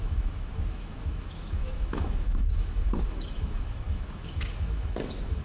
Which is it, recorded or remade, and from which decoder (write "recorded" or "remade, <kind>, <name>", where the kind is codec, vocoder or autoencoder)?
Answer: remade, autoencoder, DAC-VAE